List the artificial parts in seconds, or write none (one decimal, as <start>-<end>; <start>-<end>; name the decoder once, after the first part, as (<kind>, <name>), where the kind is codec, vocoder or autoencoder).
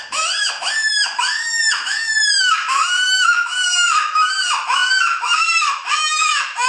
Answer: 0.0-6.7 (autoencoder, DAC-VAE)